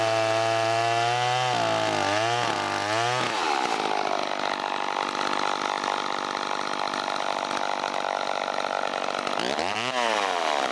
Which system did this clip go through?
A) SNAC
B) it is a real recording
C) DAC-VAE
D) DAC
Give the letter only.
B